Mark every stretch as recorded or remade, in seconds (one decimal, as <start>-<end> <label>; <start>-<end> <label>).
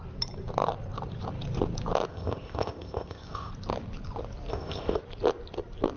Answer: 0.0-2.1 recorded; 2.1-3.5 remade; 3.5-4.5 recorded; 4.5-5.0 remade; 5.0-6.0 recorded